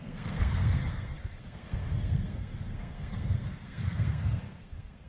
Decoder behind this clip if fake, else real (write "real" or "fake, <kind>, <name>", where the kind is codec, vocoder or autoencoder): fake, codec, SNAC